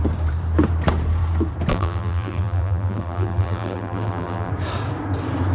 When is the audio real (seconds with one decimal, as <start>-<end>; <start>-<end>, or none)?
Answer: 0.0-1.7; 4.5-5.5